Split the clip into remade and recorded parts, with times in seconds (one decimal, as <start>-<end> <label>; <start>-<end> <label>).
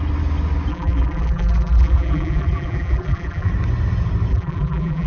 0.0-0.7 recorded; 0.7-3.5 remade; 3.5-4.3 recorded; 4.3-5.1 remade